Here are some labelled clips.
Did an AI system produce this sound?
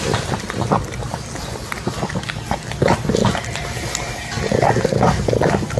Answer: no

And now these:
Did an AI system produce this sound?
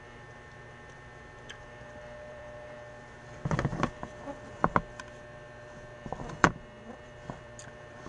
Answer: yes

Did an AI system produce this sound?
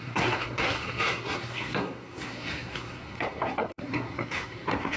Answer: yes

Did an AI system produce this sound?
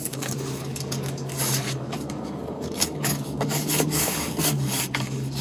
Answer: yes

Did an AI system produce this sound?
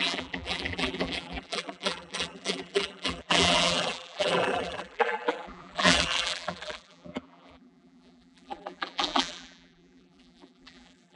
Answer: yes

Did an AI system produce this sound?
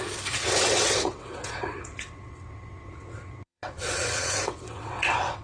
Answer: yes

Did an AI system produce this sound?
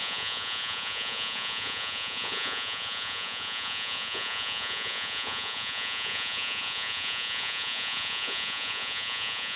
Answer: yes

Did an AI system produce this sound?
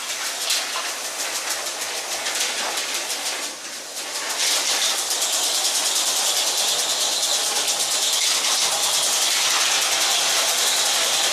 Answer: no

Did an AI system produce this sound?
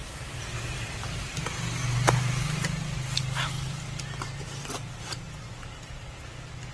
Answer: no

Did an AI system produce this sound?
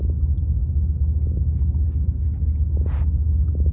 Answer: no